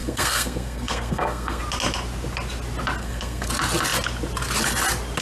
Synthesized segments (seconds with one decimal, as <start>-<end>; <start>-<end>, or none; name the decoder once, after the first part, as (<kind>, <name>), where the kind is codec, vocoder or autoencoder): 0.0-1.6 (codec, SNAC); 3.0-3.5